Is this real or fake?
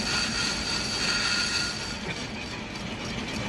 real